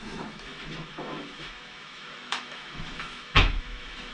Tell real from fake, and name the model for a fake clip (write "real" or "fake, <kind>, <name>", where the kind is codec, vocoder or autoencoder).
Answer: fake, autoencoder, DAC-VAE